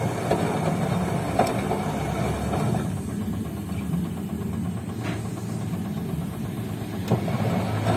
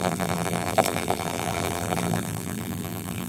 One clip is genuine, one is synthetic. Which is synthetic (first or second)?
second